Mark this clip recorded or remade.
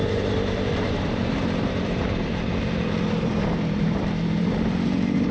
remade